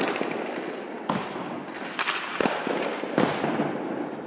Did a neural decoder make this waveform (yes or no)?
no